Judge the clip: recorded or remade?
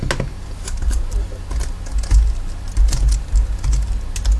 recorded